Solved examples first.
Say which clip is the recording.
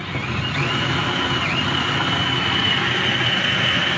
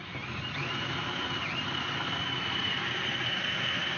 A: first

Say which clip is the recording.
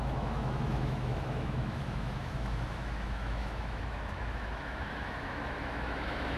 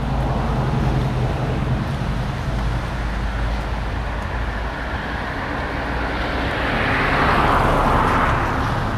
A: second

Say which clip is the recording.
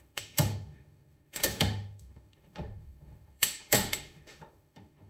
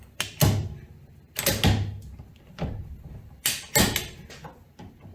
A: second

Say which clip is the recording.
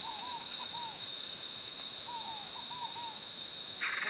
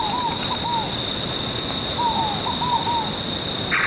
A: second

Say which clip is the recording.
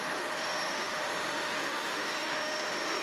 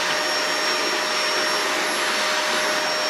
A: second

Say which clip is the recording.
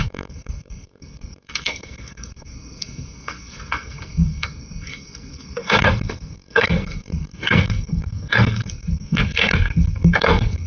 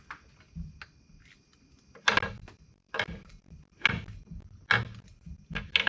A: second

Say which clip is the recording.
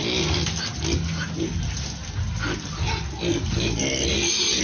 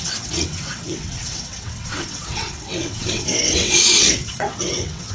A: first